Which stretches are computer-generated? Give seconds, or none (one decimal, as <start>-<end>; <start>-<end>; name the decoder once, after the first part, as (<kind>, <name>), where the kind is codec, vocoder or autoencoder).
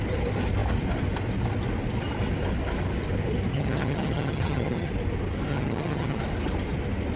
3.5-4.9 (vocoder, HiFi-GAN); 5.5-6.2